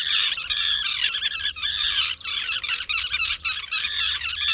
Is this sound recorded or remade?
remade